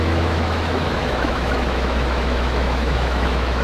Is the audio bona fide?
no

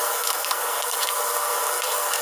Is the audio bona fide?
no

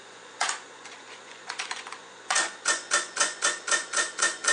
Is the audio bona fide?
no